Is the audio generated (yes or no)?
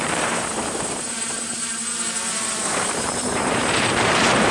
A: yes